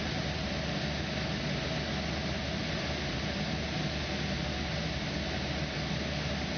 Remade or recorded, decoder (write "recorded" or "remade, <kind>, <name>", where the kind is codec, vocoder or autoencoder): recorded